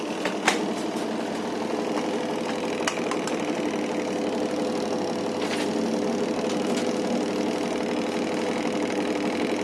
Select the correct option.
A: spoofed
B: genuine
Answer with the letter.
B